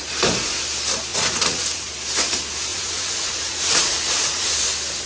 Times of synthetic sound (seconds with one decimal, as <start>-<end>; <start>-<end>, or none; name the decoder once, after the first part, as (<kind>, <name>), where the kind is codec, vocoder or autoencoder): 1.1-1.9 (vocoder, Vocos); 2.7-4.5